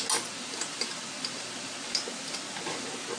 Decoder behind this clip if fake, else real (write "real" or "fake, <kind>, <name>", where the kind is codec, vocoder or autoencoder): real